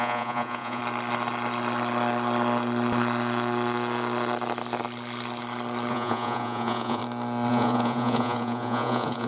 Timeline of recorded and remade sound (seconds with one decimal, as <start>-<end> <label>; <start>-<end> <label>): 0.0-0.8 remade; 0.8-5.9 recorded; 5.9-7.0 remade; 7.0-7.5 recorded; 7.5-9.3 remade